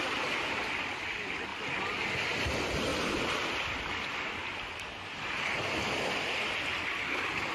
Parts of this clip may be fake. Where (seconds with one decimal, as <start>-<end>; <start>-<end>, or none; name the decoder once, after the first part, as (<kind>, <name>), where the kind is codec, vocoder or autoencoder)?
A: 2.9-7.5 (vocoder, BigVGAN v2)